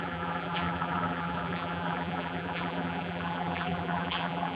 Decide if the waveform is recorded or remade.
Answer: remade